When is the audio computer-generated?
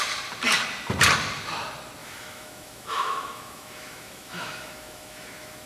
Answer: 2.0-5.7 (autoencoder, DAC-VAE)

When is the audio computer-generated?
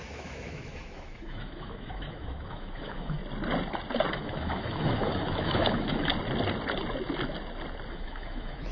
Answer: 0.0-3.2 (autoencoder, DAC-VAE); 4.1-6.1; 7.9-8.7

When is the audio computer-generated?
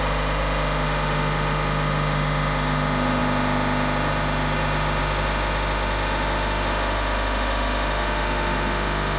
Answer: 0.0-9.2 (autoencoder, DAC-VAE)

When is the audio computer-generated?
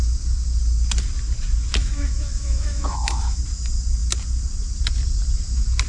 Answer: 1.8-3.4 (autoencoder, DAC-VAE)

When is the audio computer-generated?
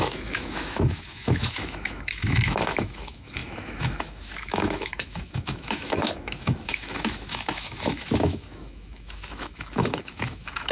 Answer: 0.0-10.7 (autoencoder, DAC-VAE)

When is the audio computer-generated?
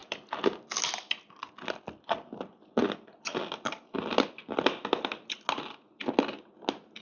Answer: none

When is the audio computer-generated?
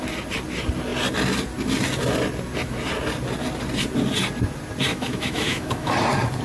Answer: 4.9-5.9 (autoencoder, DAC-VAE)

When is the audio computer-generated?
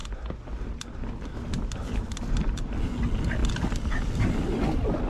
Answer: none